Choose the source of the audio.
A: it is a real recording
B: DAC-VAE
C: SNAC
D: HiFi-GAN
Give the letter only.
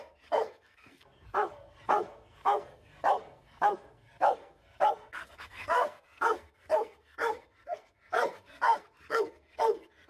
C